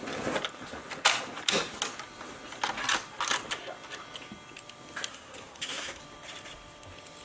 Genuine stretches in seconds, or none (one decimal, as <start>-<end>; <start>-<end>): 0.0-5.1; 6.0-7.2